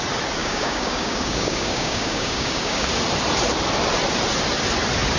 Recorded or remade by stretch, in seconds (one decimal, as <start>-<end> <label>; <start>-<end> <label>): 0.0-0.4 recorded; 0.4-2.9 remade; 2.9-5.2 recorded